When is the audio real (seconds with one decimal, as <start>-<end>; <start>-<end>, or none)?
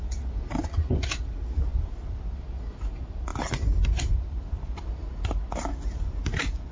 0.0-6.7